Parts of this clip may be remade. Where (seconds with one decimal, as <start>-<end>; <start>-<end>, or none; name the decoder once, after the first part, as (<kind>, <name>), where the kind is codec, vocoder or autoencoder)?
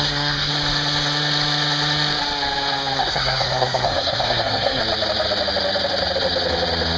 0.0-0.5 (codec, SNAC); 3.0-4.8